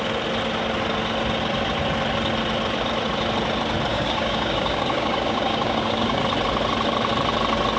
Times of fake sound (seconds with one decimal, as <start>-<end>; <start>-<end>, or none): 3.9-6.2